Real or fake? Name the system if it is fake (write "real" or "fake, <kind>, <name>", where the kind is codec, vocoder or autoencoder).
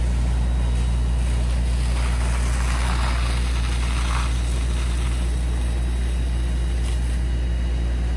real